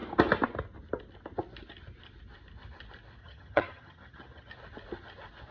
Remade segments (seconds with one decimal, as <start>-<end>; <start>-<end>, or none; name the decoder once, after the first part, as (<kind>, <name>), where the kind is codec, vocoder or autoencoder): 3.2-4.5 (vocoder, HiFi-GAN)